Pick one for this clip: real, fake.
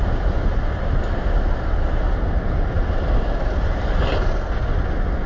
real